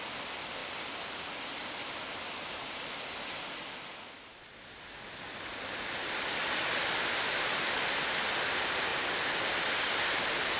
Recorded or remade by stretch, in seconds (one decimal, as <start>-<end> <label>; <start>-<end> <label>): 0.0-0.6 recorded; 0.6-3.9 remade; 3.9-4.3 recorded; 4.3-5.0 remade; 5.0-10.6 recorded